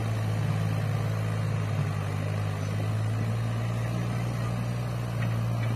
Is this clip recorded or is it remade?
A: recorded